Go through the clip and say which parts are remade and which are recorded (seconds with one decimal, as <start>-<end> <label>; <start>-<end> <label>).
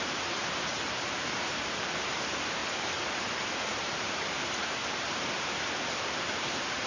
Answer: 0.0-2.6 remade; 2.6-3.7 recorded; 3.7-4.8 remade; 4.8-6.0 recorded; 6.0-6.9 remade